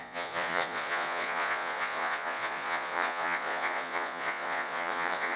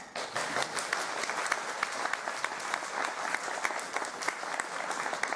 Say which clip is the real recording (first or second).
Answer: second